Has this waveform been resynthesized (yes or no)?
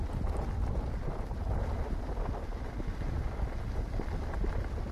no